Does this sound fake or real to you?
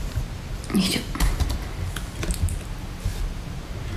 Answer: real